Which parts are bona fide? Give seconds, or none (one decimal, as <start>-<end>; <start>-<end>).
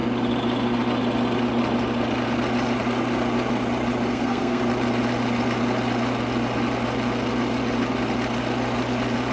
0.0-4.1; 4.6-9.3